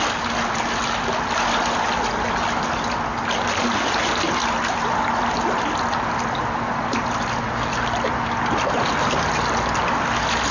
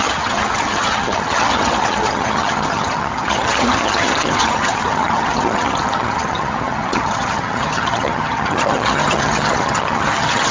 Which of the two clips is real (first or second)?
first